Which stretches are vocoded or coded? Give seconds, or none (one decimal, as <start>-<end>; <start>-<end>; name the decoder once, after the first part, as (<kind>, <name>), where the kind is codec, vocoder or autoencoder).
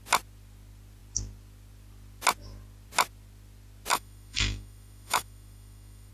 3.9-6.1 (autoencoder, DAC-VAE)